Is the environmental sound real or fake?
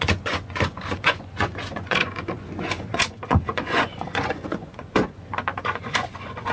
fake